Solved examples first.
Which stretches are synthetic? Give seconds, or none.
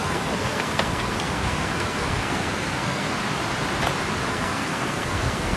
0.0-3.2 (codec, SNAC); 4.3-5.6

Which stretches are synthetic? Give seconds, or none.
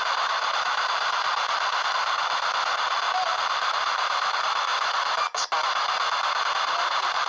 0.0-4.7 (vocoder, BigVGAN v2); 6.5-7.3